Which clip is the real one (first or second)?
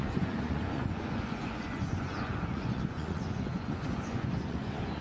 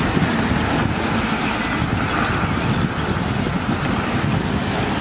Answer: second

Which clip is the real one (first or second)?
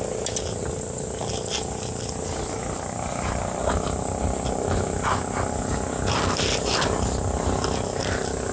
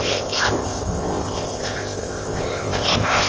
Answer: first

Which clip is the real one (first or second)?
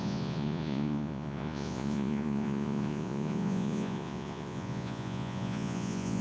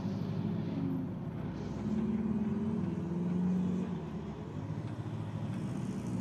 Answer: second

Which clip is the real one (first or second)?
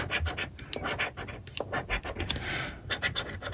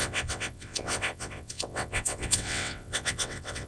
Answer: first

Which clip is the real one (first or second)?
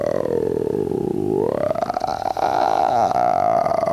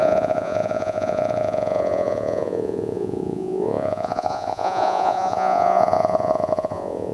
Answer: first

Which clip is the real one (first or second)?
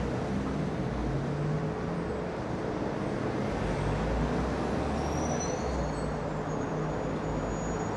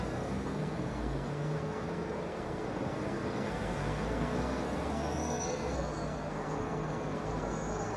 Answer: first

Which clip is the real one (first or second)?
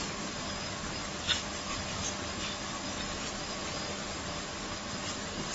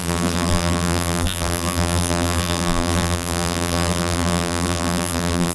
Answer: first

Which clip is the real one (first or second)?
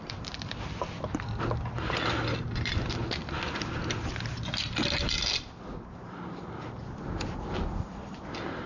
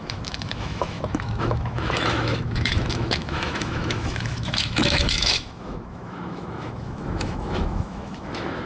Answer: first